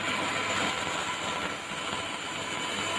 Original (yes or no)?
yes